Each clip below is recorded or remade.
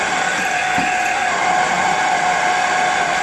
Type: recorded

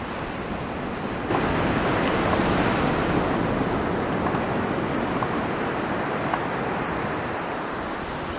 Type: recorded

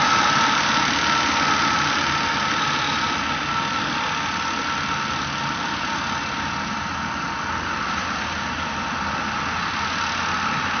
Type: recorded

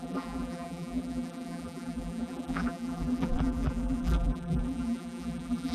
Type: remade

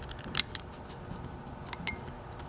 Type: recorded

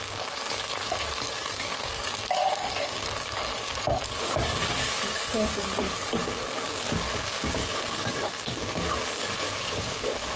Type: remade